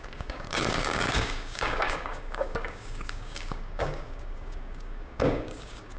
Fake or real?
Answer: fake